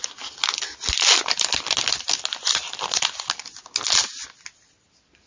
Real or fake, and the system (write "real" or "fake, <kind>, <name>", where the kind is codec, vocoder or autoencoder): real